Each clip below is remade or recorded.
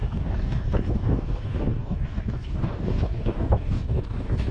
remade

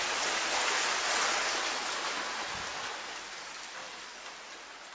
recorded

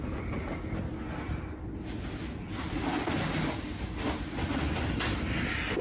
recorded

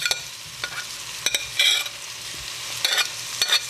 recorded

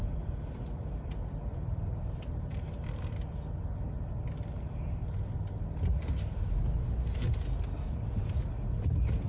recorded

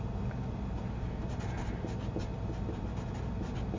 recorded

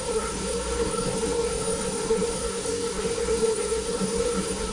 remade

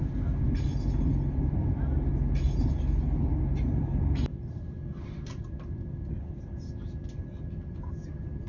recorded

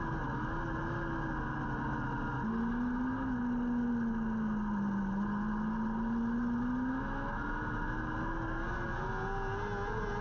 recorded